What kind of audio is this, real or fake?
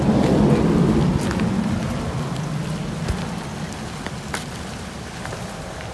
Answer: real